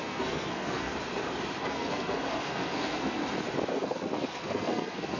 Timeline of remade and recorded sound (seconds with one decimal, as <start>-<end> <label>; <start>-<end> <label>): 0.0-0.9 remade; 0.9-1.7 recorded; 1.7-3.2 remade; 3.2-3.7 recorded; 3.7-5.2 remade